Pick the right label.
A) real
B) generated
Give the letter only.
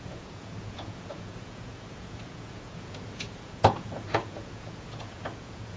B